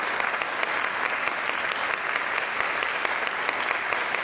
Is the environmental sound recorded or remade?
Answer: recorded